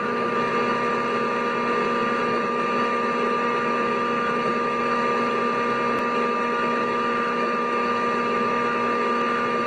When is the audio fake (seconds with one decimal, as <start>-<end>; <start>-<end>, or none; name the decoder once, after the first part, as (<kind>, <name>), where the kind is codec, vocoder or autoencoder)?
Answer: 0.0-0.5 (autoencoder, DAC-VAE); 2.2-5.4; 6.0-9.7